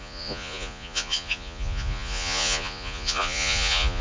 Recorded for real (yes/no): no